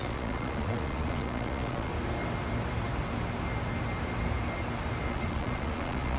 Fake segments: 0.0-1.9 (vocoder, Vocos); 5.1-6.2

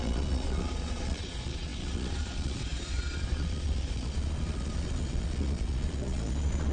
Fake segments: 0.0-6.7 (vocoder, Vocos)

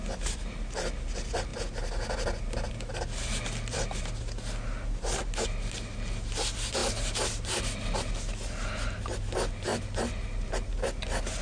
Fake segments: none

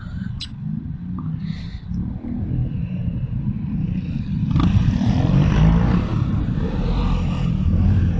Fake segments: 2.6-5.6 (vocoder, BigVGAN v2); 6.1-7.0

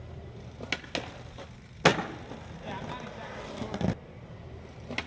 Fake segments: none

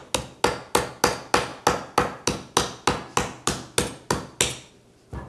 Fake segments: none